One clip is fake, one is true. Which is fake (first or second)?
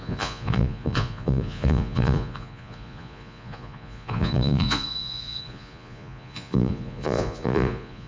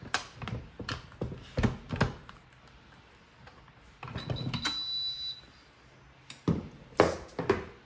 first